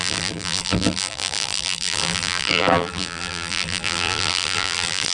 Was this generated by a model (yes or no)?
yes